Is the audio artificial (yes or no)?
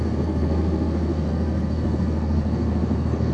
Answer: yes